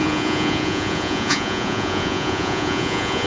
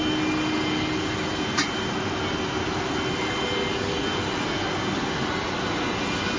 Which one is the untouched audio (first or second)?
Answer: second